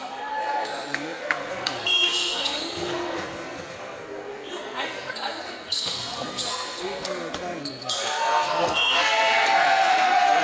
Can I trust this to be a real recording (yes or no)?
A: no